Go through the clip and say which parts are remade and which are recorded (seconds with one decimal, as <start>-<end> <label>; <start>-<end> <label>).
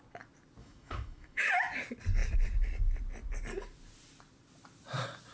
0.0-0.6 recorded; 0.6-1.5 remade; 1.5-5.3 recorded